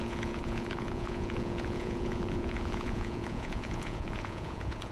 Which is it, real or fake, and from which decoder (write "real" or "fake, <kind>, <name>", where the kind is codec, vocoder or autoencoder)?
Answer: fake, vocoder, Vocos